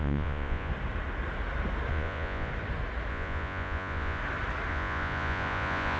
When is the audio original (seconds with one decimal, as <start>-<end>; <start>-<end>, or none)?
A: 0.7-1.9; 2.5-3.1; 4.2-4.7